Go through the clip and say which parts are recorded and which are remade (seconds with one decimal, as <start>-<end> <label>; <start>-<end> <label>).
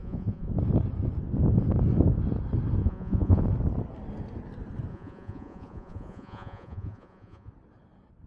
0.0-0.5 remade; 0.5-2.8 recorded; 2.8-3.4 remade; 3.4-4.9 recorded; 4.9-7.5 remade; 7.5-8.3 recorded